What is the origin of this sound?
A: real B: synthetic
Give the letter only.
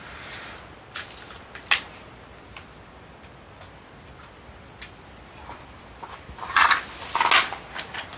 A